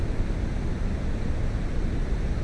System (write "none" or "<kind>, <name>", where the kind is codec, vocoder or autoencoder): none